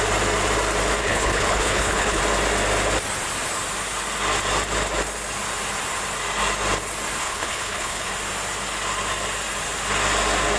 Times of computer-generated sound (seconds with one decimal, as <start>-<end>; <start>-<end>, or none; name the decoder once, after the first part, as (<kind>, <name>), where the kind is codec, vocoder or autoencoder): 1.0-2.2 (codec, HILCodec); 7.2-8.1